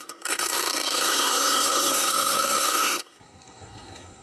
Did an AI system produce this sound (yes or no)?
yes